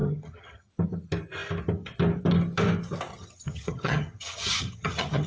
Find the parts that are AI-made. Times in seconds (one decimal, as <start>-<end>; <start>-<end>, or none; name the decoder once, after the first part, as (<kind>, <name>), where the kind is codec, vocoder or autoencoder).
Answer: 0.0-0.7 (vocoder, HiFi-GAN); 3.1-5.3